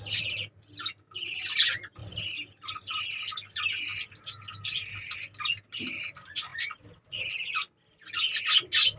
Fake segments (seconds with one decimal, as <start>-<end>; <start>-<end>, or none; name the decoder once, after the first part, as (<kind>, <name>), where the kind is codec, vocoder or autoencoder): none